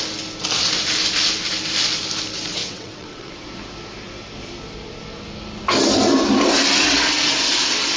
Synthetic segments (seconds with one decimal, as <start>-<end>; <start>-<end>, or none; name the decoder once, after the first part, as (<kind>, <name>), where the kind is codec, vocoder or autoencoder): 2.6-3.3 (vocoder, WaveNeXt)